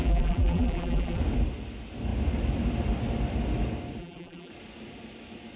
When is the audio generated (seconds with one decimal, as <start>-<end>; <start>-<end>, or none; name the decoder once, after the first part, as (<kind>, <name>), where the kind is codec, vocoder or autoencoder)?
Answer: 0.0-1.2 (vocoder, BigVGAN v2); 4.0-4.5